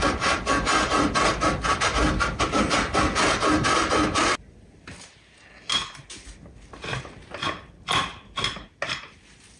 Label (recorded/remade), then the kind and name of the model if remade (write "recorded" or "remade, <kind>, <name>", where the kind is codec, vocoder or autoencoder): recorded